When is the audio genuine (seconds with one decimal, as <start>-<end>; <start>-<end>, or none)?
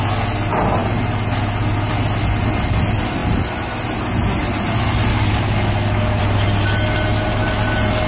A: 0.0-5.1; 6.2-8.1